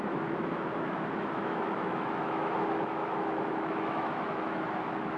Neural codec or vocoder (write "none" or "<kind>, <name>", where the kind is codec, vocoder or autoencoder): autoencoder, DAC-VAE